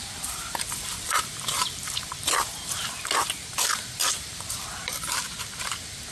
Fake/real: fake